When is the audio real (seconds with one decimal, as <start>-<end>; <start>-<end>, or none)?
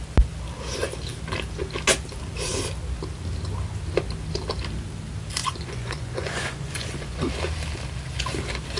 0.0-5.4; 7.3-8.8